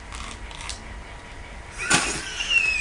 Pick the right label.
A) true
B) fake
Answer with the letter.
A